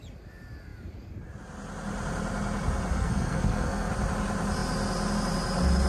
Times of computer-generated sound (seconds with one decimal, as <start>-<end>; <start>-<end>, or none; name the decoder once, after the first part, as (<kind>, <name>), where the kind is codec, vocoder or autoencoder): 2.9-3.9 (codec, SNAC)